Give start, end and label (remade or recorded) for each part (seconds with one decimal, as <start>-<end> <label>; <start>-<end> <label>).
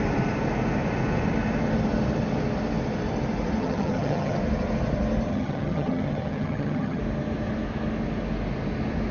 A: 0.0-3.6 recorded; 3.6-4.4 remade; 4.4-5.3 recorded; 5.3-7.0 remade; 7.0-9.1 recorded